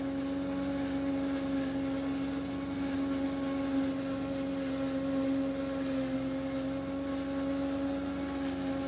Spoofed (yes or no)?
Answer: no